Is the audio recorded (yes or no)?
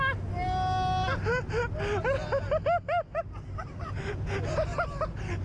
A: yes